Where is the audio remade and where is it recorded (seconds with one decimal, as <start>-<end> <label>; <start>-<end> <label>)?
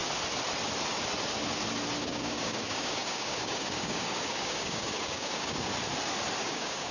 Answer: 0.0-2.0 recorded; 2.0-5.7 remade; 5.7-6.4 recorded; 6.4-6.9 remade